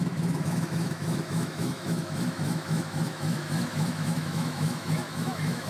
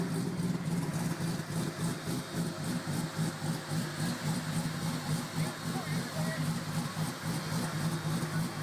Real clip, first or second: second